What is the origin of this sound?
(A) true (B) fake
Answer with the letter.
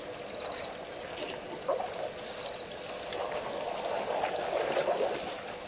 A